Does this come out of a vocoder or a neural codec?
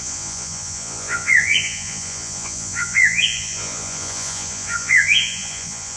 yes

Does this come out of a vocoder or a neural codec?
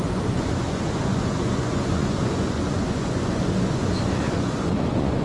yes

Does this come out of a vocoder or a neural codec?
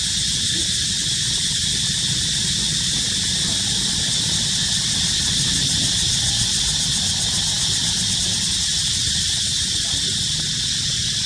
no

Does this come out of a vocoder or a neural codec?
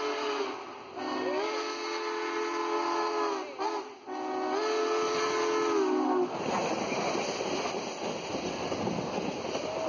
no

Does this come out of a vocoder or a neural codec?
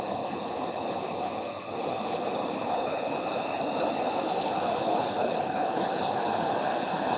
yes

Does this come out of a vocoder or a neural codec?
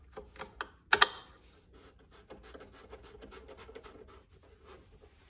no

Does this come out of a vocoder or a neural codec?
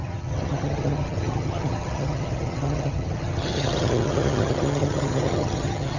yes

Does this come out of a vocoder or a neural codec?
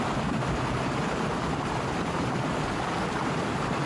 no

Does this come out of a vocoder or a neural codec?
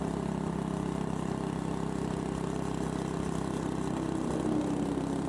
no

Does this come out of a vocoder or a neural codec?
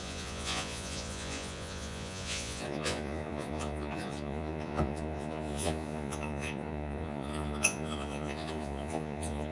yes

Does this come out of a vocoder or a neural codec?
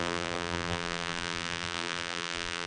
yes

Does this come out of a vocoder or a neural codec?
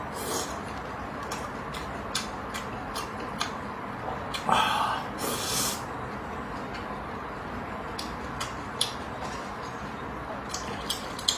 no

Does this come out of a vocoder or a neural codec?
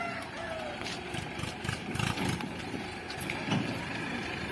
yes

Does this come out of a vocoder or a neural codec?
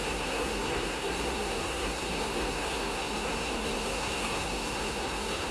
yes